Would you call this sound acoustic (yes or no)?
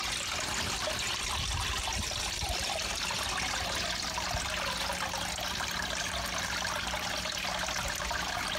yes